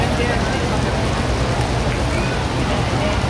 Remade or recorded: recorded